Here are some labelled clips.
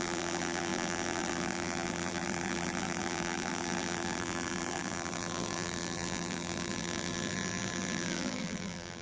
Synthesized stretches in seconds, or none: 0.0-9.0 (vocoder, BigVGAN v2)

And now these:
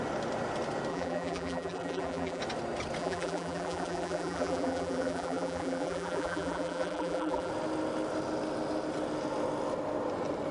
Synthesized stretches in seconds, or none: 0.9-2.4 (vocoder, BigVGAN v2); 3.0-7.5

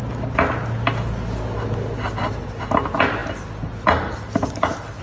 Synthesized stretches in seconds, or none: none